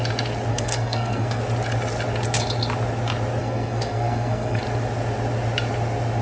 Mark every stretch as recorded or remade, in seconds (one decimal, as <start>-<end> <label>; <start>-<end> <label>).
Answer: 0.0-0.5 recorded; 0.5-1.4 remade; 1.4-3.4 recorded; 3.4-4.6 remade; 4.6-6.2 recorded